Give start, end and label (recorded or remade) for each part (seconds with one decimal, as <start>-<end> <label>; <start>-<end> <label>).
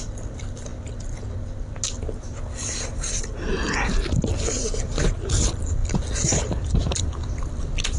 0.0-8.0 recorded